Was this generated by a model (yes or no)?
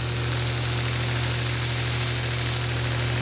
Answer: no